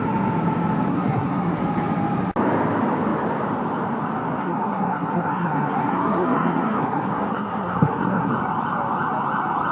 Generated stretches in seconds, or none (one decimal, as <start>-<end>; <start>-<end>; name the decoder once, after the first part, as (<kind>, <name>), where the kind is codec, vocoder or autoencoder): 0.9-1.6 (codec, SNAC); 4.4-8.3